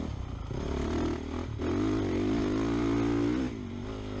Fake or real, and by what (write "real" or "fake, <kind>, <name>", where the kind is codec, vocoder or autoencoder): real